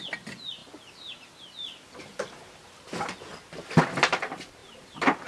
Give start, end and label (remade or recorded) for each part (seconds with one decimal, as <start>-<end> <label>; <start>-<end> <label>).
0.0-5.3 recorded